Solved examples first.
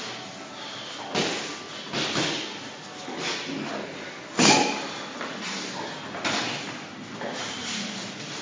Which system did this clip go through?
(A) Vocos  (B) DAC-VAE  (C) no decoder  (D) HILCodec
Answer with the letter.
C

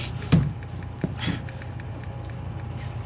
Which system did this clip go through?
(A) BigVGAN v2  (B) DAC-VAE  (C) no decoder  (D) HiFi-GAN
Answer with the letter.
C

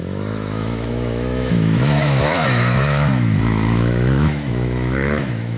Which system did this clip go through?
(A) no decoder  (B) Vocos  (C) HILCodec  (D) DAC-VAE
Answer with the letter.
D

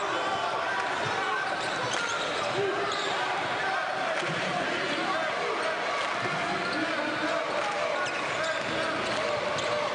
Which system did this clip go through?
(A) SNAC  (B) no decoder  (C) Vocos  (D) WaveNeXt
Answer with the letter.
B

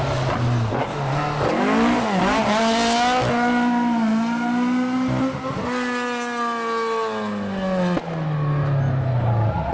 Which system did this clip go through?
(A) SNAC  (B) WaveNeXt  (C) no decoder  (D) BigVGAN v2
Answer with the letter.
C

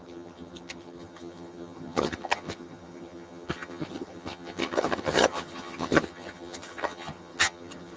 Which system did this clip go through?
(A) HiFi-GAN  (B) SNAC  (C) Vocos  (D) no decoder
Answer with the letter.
A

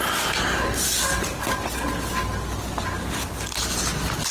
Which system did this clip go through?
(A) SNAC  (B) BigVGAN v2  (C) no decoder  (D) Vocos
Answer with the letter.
C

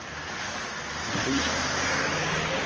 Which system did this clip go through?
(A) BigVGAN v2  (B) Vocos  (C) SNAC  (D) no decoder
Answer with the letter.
D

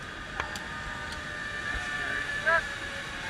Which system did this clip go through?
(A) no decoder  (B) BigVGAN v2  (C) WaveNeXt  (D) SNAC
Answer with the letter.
A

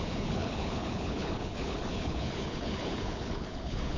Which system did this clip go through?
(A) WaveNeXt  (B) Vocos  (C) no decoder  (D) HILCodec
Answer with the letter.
D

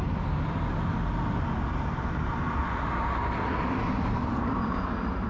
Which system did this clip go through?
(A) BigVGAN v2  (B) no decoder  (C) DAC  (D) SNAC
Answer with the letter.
B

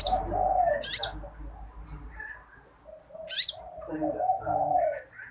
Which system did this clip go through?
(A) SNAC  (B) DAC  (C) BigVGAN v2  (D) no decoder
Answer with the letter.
C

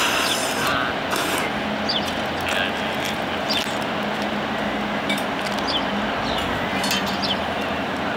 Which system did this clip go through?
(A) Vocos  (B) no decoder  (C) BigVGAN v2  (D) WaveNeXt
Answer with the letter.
B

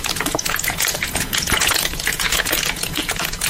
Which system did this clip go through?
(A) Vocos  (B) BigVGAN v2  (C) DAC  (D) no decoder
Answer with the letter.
A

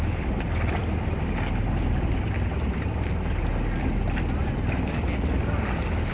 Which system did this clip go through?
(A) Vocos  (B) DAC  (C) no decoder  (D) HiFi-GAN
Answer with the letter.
C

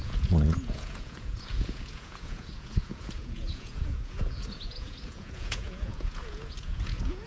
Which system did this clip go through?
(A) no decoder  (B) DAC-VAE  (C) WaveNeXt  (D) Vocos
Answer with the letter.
D